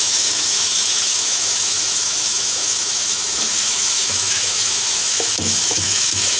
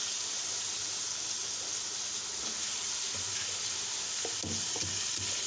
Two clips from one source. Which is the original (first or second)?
second